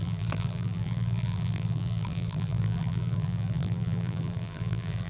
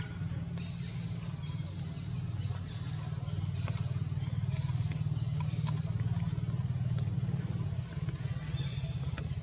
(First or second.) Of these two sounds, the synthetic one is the first